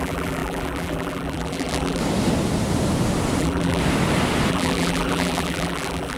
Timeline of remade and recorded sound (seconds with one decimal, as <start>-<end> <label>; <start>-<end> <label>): 0.0-2.0 remade; 2.0-3.4 recorded; 3.4-3.8 remade; 3.8-4.5 recorded; 4.5-6.2 remade